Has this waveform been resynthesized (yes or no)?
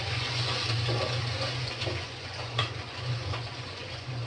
yes